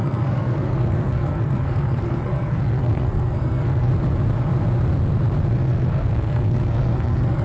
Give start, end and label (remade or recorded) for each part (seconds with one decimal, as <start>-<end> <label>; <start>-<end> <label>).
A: 0.0-3.9 remade; 3.9-5.5 recorded; 5.5-7.4 remade